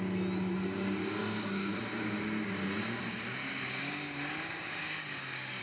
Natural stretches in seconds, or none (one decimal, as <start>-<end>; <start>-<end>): 0.0-1.0; 1.8-3.4